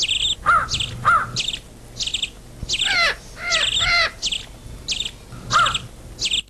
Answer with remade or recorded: recorded